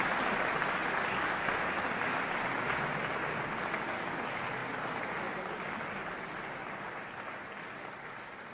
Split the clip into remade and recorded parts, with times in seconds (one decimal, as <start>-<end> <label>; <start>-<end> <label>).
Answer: 0.0-8.5 recorded